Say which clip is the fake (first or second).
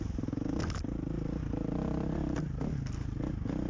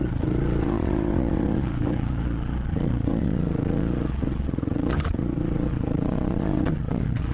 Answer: second